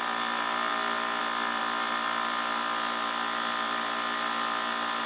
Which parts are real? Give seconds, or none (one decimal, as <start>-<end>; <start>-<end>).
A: 0.0-5.1